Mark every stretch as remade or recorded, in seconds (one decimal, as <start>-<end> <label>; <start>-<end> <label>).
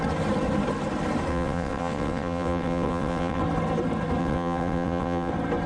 0.0-1.3 recorded; 1.3-3.4 remade; 3.4-4.2 recorded; 4.2-5.3 remade; 5.3-5.7 recorded